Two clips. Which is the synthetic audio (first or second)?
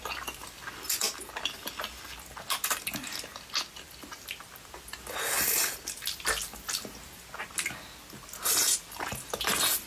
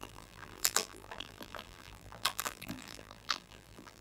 second